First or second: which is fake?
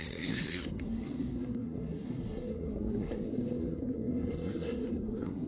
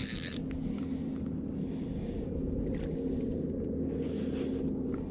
first